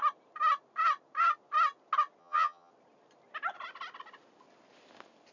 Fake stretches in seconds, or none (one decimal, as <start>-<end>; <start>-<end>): 2.2-2.7